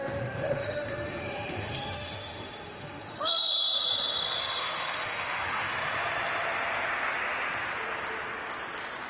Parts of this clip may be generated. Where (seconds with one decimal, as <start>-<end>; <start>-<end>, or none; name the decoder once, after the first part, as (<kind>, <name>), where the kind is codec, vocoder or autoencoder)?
0.0-3.5 (autoencoder, DAC-VAE); 4.6-5.7

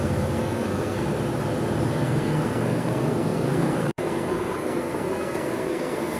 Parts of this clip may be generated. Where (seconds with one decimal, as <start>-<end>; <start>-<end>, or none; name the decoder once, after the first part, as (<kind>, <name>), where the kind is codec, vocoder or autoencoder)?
0.0-1.1 (codec, SNAC); 1.9-6.2

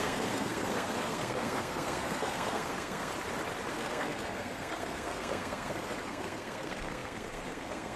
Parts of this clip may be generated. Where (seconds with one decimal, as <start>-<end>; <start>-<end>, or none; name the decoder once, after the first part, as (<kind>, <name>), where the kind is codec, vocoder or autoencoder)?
0.0-3.1 (codec, SNAC); 3.7-8.0

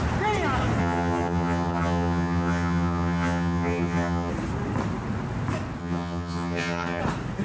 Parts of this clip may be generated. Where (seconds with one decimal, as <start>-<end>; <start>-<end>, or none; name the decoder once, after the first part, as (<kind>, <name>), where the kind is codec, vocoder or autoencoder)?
0.8-4.3 (vocoder, HiFi-GAN); 5.8-7.0